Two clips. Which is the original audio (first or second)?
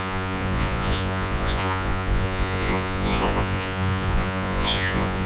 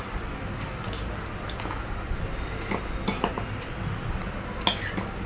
second